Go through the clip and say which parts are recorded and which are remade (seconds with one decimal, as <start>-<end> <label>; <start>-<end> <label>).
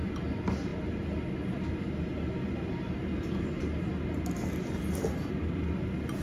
0.0-6.2 recorded